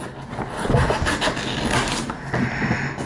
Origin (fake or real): real